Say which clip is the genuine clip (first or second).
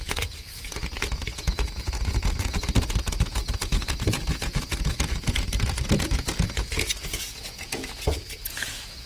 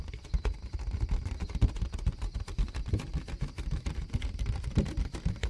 second